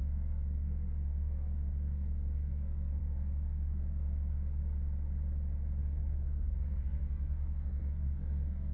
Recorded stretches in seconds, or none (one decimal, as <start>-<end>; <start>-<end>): 4.6-5.8